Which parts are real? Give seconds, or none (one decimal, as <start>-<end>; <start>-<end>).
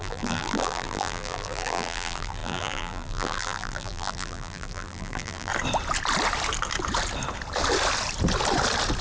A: 5.5-9.0